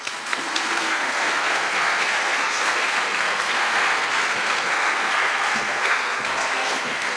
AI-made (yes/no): yes